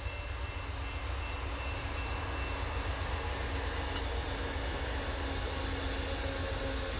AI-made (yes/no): no